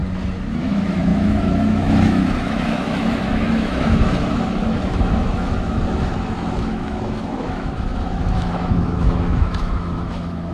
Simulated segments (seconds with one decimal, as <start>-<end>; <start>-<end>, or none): 0.5-10.5

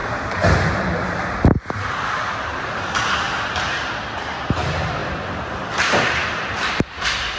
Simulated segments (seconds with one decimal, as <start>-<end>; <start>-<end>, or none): none